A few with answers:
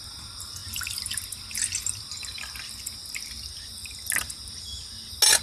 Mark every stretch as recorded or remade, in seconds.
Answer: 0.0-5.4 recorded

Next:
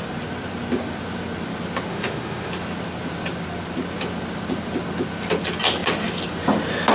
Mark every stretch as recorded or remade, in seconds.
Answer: 0.0-1.9 recorded; 1.9-2.5 remade; 2.5-6.9 recorded

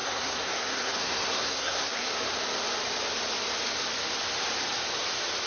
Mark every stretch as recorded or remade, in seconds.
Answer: 0.0-2.1 remade; 2.1-5.5 recorded

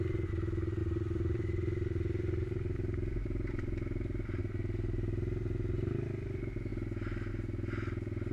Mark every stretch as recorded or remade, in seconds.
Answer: 0.0-0.8 recorded; 0.8-4.4 remade; 4.4-8.3 recorded

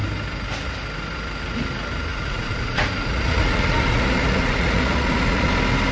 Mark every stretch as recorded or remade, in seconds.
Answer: 0.0-2.1 recorded; 2.1-5.5 remade; 5.5-5.9 recorded

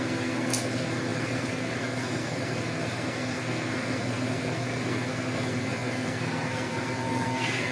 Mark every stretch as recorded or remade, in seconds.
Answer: 0.0-7.7 remade